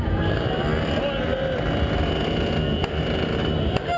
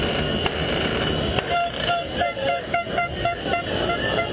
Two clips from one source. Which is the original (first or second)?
first